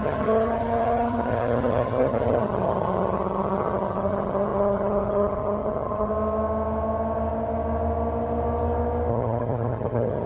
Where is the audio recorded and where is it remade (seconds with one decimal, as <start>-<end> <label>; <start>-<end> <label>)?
0.0-6.1 remade; 6.1-9.1 recorded; 9.1-10.3 remade